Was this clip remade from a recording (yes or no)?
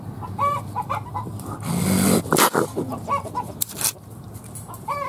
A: no